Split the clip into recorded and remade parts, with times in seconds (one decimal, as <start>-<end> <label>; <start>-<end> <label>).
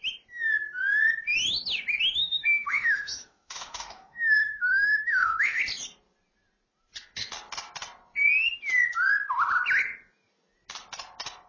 0.0-2.2 recorded; 2.2-5.6 remade; 5.6-11.5 recorded